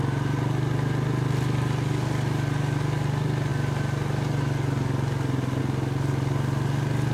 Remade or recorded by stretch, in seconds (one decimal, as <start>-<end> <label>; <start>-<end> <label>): 0.0-7.1 recorded